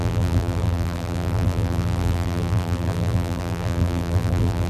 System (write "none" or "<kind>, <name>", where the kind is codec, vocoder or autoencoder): vocoder, BigVGAN v2